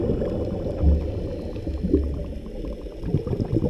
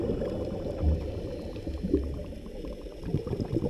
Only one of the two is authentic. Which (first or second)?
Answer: first